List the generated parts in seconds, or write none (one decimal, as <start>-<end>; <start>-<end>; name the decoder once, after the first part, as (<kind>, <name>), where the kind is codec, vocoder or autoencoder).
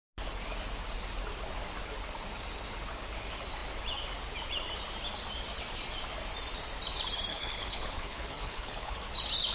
7.3-9.0 (codec, HILCodec)